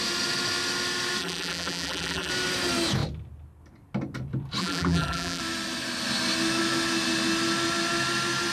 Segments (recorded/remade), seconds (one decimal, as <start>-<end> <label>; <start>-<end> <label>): 0.0-1.2 recorded; 1.2-2.3 remade; 2.3-4.6 recorded; 4.6-5.4 remade; 5.4-8.5 recorded